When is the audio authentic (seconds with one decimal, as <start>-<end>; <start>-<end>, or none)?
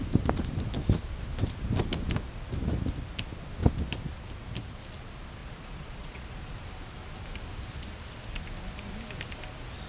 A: 0.0-5.4; 6.6-9.9